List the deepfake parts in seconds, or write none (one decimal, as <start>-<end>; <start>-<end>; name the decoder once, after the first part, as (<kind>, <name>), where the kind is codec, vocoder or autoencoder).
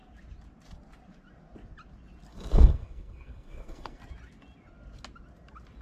2.3-4.0 (codec, SNAC)